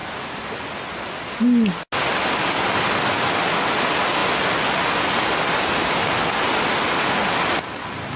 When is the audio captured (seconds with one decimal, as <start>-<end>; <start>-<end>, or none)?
0.0-8.2